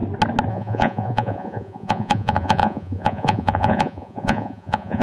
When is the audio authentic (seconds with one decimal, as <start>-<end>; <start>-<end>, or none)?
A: 0.0-0.5